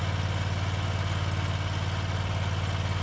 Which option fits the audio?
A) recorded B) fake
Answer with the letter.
A